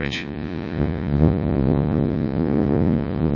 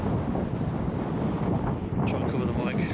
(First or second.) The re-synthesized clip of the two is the first